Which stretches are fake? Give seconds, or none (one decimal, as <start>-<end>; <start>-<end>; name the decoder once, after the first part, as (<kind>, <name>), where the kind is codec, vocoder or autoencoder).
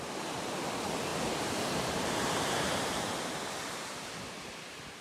1.1-4.1 (vocoder, BigVGAN v2)